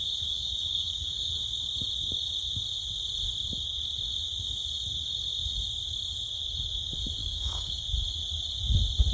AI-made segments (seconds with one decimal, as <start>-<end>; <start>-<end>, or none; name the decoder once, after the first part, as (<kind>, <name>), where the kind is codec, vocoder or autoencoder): 0.0-1.3 (codec, DAC); 7.2-7.8